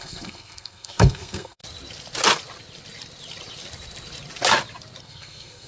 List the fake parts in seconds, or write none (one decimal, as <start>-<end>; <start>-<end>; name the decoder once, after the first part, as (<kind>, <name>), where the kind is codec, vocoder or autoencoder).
0.0-1.6 (codec, SNAC); 5.0-5.7